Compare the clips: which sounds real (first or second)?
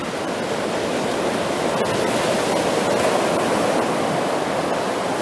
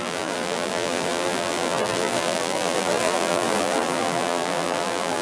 first